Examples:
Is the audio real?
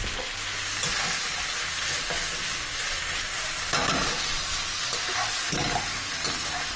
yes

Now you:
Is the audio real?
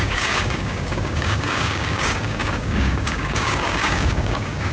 no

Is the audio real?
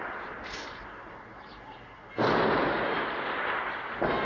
yes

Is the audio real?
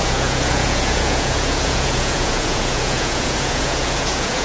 no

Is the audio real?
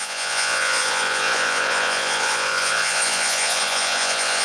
no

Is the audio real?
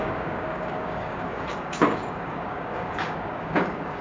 no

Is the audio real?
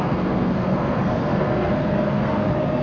no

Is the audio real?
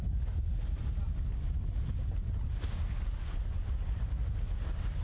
yes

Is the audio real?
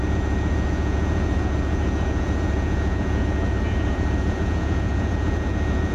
no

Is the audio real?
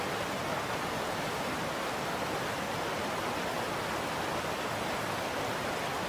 yes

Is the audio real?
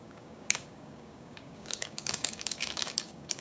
no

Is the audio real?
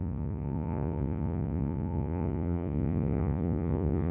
no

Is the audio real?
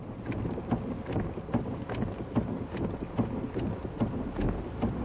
yes